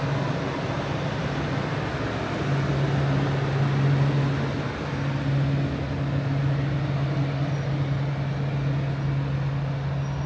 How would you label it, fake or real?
real